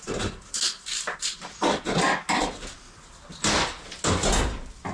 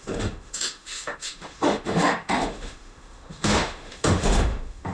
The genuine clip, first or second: first